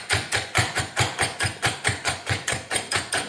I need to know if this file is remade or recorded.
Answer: remade